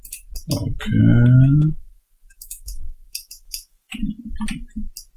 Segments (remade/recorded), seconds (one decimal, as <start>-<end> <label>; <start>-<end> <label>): 0.0-1.0 recorded; 1.0-4.0 remade; 4.0-5.2 recorded